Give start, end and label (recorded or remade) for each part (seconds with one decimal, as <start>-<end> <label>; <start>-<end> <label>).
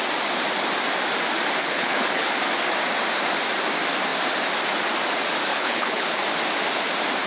0.0-1.6 recorded; 1.6-2.3 remade; 2.3-5.5 recorded; 5.5-6.2 remade; 6.2-7.3 recorded